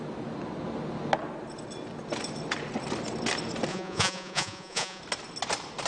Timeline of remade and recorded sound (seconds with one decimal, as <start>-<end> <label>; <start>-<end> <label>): 0.0-3.7 recorded; 3.7-5.0 remade; 5.0-5.9 recorded